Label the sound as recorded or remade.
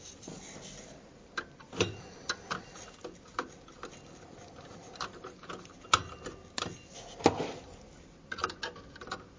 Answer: recorded